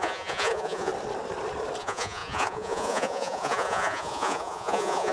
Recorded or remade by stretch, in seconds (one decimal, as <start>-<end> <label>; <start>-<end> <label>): 0.0-0.9 remade; 0.9-1.8 recorded; 1.8-5.1 remade